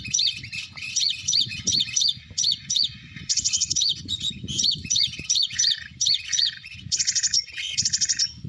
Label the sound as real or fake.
fake